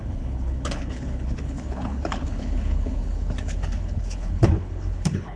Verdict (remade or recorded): remade